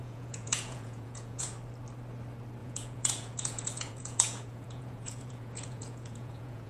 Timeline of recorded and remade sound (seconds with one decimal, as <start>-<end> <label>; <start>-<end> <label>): 0.0-1.5 remade; 1.5-2.6 recorded; 2.6-6.7 remade